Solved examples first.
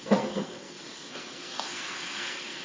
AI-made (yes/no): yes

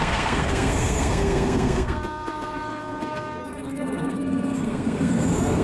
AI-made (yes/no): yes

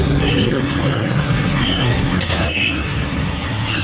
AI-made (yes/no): yes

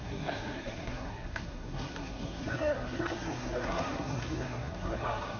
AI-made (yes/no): yes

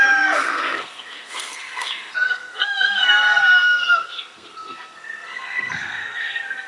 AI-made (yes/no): yes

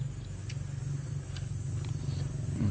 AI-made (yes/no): no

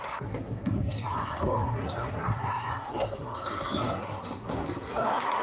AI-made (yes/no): yes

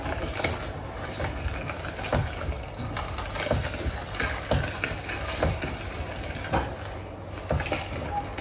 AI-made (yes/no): no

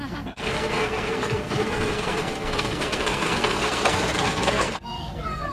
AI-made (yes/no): yes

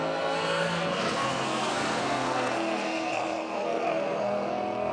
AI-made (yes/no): yes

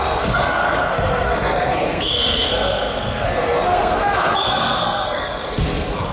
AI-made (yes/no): yes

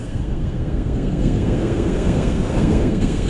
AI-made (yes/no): yes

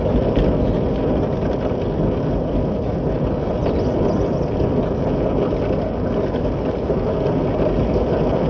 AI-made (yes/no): no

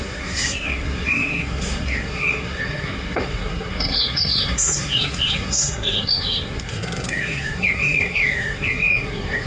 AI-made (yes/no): yes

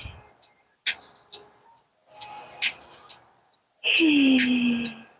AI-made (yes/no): no